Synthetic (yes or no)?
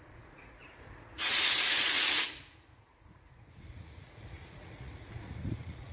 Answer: yes